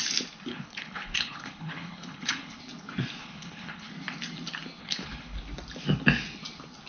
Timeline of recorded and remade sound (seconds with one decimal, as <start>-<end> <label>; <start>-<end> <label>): 0.0-0.5 recorded; 0.5-2.6 remade; 2.6-3.2 recorded; 3.2-3.9 remade; 3.9-4.8 recorded; 4.8-5.4 remade; 5.4-6.9 recorded